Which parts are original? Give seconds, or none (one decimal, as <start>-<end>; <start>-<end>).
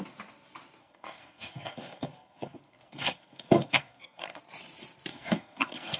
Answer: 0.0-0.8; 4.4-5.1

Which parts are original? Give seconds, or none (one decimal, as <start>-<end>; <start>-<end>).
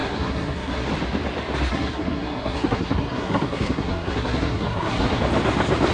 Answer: 0.9-1.7; 5.2-5.9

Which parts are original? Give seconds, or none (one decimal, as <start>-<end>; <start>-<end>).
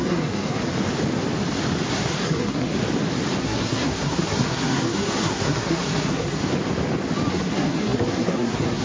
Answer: 0.6-1.9; 2.8-3.4; 6.4-7.3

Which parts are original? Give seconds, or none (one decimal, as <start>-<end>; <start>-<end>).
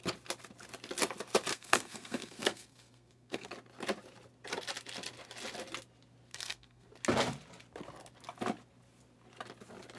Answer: 0.0-1.5; 3.5-6.3; 6.9-10.0